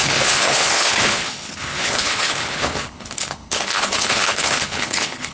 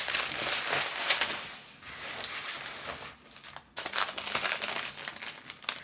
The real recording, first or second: second